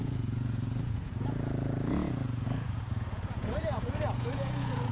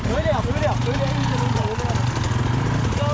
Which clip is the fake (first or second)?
first